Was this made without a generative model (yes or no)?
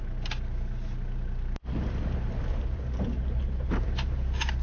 yes